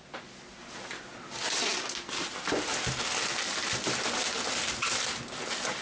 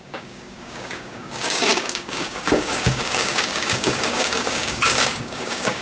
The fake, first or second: second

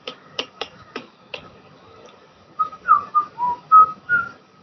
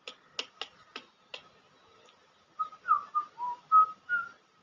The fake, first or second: first